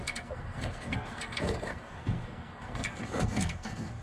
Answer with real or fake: fake